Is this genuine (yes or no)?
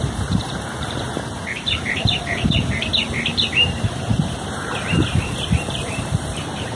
no